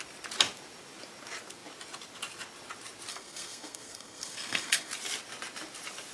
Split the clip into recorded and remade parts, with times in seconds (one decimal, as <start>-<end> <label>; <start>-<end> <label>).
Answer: 0.0-3.1 recorded; 3.1-4.9 remade; 4.9-6.1 recorded